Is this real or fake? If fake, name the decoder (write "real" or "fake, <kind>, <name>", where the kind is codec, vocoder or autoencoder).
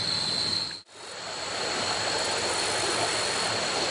real